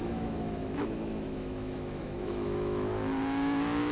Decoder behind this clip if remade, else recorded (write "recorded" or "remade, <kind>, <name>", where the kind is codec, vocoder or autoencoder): remade, autoencoder, DAC-VAE